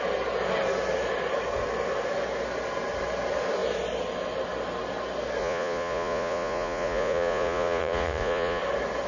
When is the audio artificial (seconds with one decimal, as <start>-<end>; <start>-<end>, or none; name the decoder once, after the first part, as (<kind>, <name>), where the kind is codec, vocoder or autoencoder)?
5.4-8.6 (vocoder, Vocos)